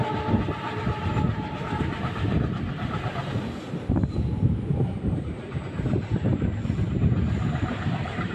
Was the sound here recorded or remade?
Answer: remade